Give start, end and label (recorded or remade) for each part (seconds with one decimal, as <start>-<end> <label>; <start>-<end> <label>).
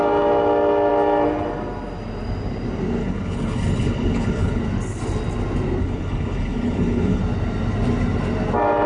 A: 0.0-3.0 recorded; 3.0-4.6 remade; 4.6-5.8 recorded; 5.8-7.2 remade; 7.2-8.9 recorded